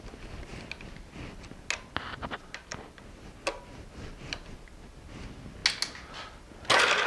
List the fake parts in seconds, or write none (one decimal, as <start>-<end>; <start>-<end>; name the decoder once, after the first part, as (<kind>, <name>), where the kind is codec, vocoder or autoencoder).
none